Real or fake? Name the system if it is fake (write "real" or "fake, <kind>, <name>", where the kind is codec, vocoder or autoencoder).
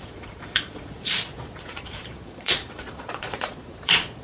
fake, vocoder, Vocos